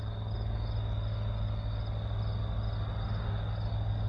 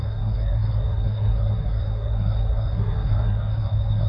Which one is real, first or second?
first